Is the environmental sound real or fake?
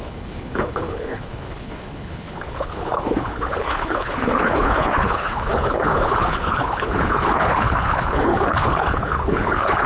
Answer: fake